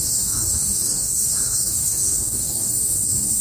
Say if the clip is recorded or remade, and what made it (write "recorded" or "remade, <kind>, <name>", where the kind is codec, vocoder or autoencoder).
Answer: remade, codec, DAC